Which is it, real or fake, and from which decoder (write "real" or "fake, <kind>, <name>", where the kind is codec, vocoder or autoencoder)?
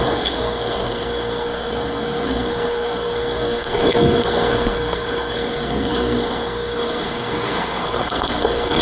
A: fake, codec, SNAC